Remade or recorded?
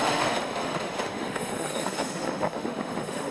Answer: remade